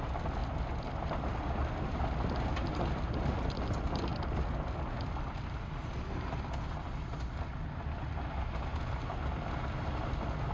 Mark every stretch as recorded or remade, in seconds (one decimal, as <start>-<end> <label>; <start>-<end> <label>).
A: 0.0-10.5 recorded